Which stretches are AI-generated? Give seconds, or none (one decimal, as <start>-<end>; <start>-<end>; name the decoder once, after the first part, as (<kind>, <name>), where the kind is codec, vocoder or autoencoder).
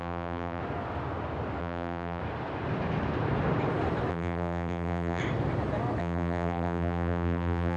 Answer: 0.0-0.6 (vocoder, BigVGAN v2); 1.6-2.2; 4.1-5.2; 6.0-7.8